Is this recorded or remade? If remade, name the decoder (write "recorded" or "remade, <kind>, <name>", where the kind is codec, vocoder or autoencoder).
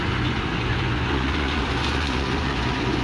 remade, vocoder, Vocos